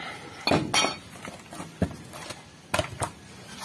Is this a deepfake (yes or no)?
no